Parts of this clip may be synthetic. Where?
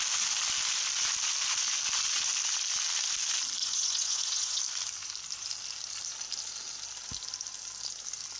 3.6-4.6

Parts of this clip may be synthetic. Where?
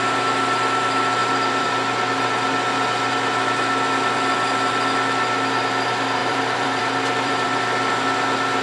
1.2-1.7; 6.2-8.0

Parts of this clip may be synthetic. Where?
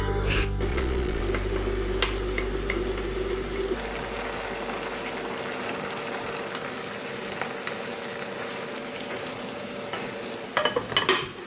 0.7-1.2